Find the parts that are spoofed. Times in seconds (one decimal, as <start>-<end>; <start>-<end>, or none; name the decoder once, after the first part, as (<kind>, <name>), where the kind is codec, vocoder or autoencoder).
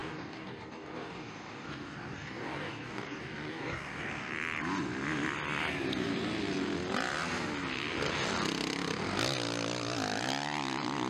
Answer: 0.0-4.3 (codec, DAC)